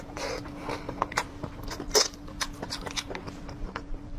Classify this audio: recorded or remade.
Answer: remade